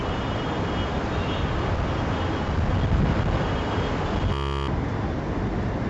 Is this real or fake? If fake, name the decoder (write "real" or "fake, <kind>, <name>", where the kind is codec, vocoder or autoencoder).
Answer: real